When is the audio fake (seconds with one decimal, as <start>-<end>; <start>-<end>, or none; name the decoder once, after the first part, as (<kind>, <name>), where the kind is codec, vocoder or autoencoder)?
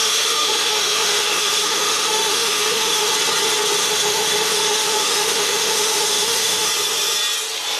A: 0.0-3.1 (autoencoder, DAC-VAE); 3.8-6.7